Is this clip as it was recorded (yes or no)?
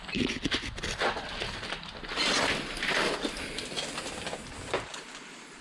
yes